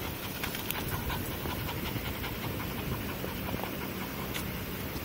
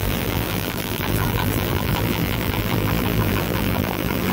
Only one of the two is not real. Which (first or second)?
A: second